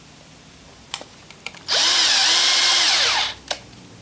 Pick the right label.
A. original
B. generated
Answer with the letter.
A